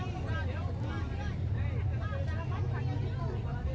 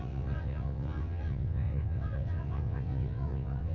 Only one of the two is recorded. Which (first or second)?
first